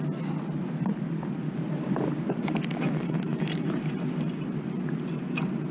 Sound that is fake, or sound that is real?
real